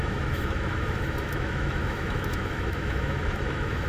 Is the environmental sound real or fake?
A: fake